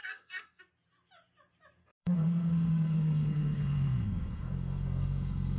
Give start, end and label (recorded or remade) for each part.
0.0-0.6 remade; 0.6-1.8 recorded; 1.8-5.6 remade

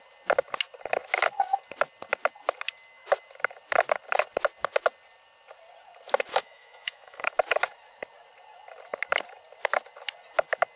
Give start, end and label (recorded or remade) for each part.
0.0-6.3 recorded; 6.3-7.3 remade; 7.3-10.8 recorded

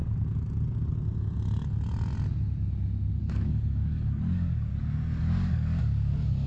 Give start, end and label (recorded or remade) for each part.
0.0-3.2 recorded; 3.2-4.7 remade; 4.7-5.2 recorded; 5.2-6.5 remade